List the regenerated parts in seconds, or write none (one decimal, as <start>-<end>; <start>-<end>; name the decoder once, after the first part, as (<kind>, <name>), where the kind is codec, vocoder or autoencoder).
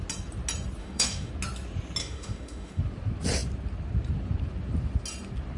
0.8-1.3 (autoencoder, DAC-VAE); 2.0-2.8